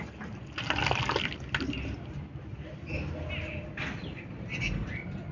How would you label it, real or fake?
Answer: real